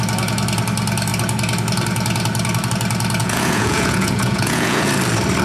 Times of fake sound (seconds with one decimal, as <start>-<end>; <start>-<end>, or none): 3.2-4.9